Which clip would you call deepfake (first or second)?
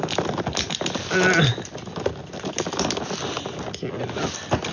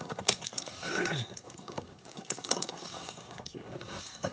second